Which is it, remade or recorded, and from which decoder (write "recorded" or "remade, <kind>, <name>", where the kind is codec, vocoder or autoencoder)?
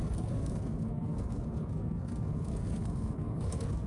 remade, codec, SNAC